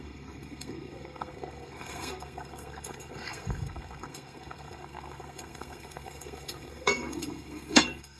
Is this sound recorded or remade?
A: remade